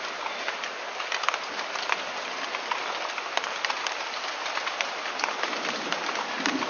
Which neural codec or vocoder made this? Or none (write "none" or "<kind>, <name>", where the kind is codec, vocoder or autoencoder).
none